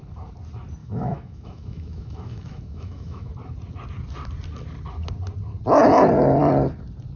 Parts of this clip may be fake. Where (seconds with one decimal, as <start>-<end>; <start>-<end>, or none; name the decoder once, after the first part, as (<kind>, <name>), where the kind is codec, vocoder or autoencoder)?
0.8-3.3 (autoencoder, DAC-VAE)